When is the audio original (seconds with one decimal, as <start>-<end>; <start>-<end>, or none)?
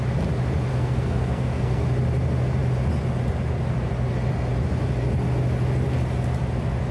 0.0-0.7; 1.8-6.9